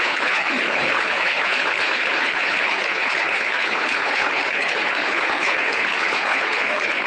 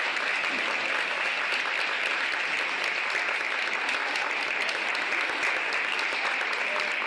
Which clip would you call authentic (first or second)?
second